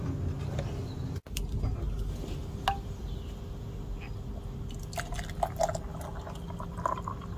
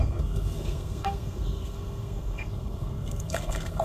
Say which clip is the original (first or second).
first